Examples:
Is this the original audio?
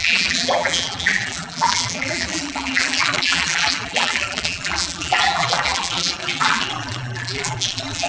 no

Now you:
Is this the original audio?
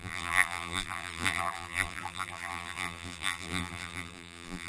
no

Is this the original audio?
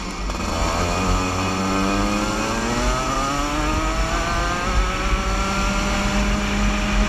yes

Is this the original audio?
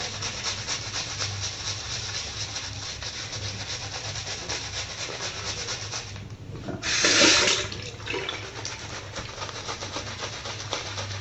yes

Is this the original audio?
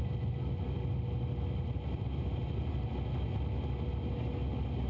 yes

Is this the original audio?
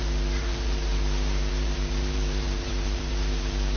no